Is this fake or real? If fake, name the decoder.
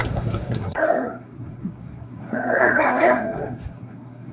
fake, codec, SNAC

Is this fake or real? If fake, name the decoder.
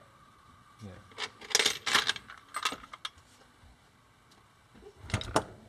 real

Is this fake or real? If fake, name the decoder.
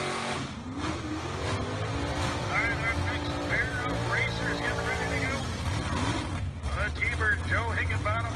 real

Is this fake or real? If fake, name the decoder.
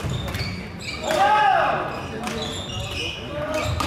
real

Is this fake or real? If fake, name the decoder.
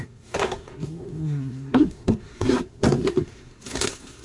fake, codec, SNAC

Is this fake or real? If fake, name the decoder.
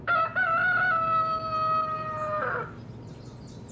real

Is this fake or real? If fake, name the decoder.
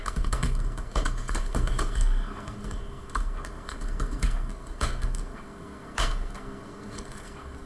fake, codec, SNAC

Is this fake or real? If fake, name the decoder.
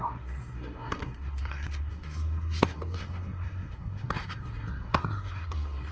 fake, codec, SNAC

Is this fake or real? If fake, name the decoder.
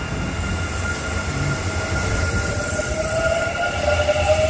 real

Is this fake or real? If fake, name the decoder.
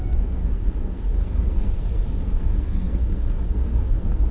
fake, codec, SNAC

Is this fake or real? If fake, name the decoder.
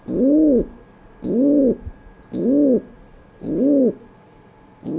real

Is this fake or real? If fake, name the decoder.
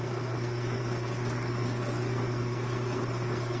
fake, codec, SNAC